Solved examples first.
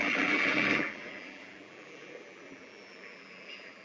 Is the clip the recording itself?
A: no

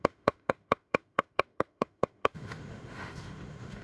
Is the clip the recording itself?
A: no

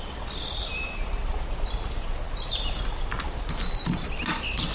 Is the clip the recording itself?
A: yes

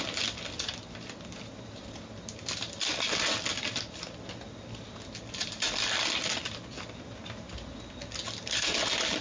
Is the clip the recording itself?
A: yes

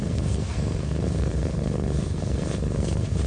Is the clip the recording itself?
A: no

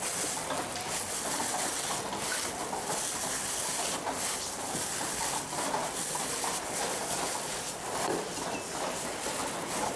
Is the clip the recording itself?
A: yes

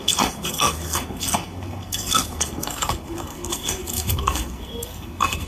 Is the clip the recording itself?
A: no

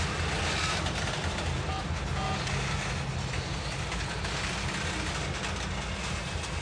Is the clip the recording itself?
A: yes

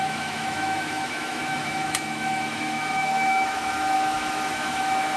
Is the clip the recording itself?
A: no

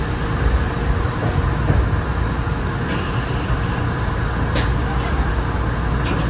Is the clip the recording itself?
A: yes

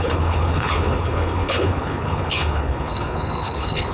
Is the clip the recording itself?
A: no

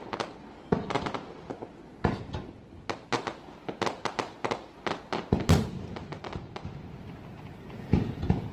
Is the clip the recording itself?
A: yes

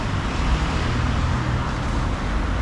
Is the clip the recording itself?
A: yes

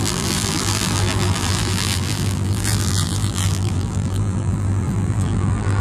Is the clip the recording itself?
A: no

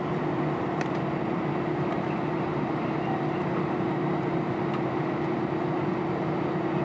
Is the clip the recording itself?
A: yes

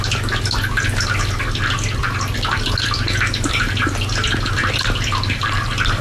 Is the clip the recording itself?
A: yes